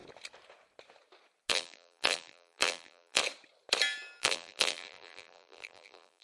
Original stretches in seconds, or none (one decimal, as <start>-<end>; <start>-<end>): 0.0-1.5; 3.2-4.2